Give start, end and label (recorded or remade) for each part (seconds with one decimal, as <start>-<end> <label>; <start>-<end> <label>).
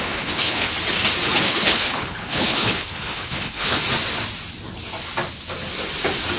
0.0-0.7 remade; 0.7-1.5 recorded; 1.5-3.8 remade; 3.8-6.4 recorded